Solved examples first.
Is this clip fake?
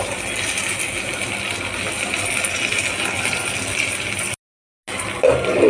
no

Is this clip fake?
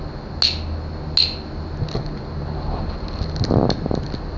no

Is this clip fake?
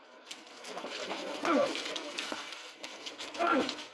yes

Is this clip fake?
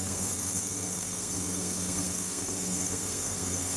yes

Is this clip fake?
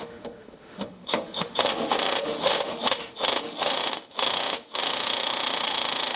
yes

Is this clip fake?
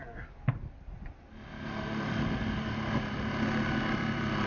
no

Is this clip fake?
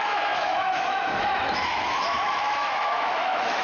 yes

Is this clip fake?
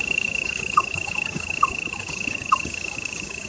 yes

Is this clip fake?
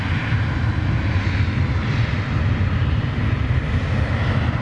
no